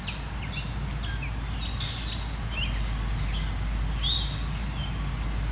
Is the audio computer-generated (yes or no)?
no